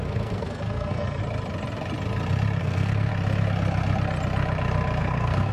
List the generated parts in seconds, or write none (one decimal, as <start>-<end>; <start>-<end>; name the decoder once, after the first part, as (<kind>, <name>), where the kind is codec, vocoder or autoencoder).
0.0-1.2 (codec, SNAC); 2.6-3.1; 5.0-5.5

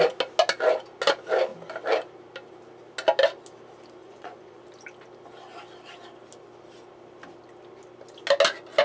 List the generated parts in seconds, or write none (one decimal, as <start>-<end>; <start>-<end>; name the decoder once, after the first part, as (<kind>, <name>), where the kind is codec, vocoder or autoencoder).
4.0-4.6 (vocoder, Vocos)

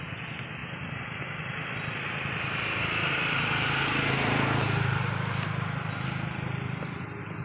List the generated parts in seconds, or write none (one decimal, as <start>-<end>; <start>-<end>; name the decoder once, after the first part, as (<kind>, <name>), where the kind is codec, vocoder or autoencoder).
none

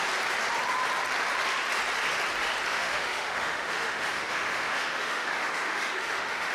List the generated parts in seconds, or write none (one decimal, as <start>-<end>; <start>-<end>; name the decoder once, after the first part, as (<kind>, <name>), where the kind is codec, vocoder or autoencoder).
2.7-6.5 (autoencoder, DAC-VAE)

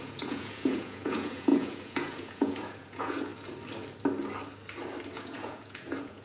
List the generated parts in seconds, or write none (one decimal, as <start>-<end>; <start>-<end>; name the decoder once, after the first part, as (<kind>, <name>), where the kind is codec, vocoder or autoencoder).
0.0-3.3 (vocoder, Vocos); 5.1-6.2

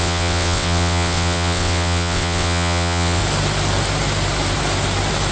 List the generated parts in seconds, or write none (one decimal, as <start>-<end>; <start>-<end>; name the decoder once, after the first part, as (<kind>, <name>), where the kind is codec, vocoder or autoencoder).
0.0-3.2 (vocoder, WaveNeXt)

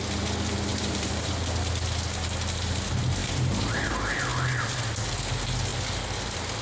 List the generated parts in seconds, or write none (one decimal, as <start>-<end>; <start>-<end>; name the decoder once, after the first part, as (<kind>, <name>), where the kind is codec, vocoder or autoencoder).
0.7-1.3 (vocoder, BigVGAN v2); 3.2-3.8

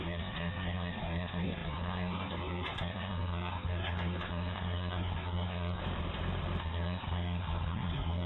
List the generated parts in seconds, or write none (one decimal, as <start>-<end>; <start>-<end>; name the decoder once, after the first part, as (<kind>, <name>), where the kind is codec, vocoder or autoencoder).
0.0-5.8 (codec, SNAC); 6.6-8.3